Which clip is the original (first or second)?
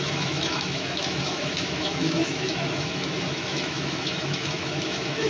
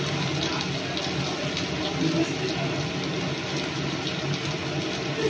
second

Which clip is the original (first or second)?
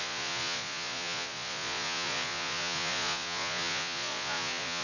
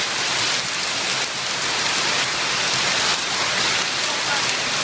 second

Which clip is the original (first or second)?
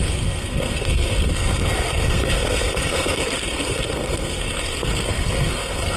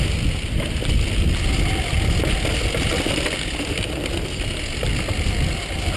second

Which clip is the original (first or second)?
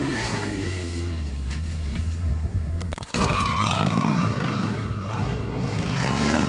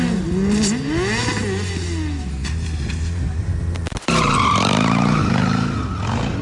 second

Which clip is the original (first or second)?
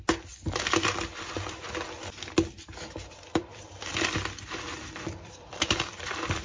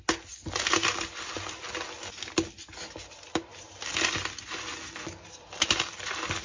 second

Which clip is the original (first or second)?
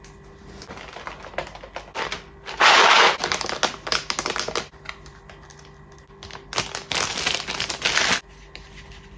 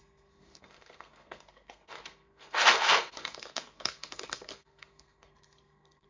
first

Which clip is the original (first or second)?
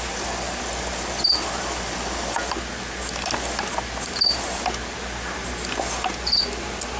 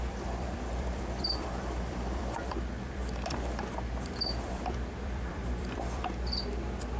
first